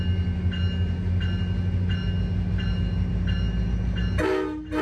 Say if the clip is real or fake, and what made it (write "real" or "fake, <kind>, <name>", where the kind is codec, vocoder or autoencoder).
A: real